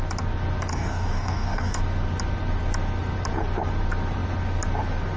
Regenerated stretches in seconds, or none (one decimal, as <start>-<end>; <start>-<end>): 0.7-1.8